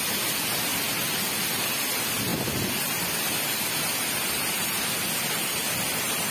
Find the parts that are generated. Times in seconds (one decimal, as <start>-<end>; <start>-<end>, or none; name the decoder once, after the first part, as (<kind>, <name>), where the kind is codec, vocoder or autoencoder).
2.3-6.3 (vocoder, BigVGAN v2)